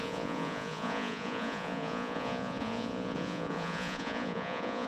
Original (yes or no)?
no